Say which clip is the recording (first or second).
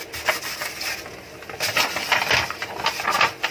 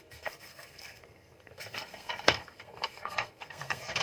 first